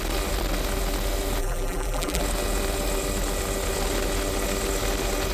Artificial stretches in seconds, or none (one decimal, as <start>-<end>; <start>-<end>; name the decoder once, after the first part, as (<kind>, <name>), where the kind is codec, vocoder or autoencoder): 1.4-2.2 (vocoder, BigVGAN v2)